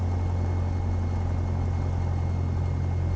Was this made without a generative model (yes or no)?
yes